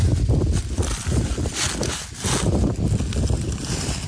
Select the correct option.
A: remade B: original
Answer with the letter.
B